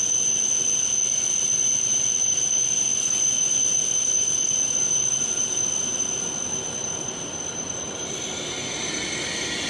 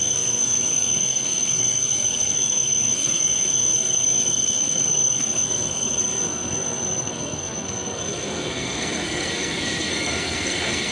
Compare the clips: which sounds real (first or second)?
first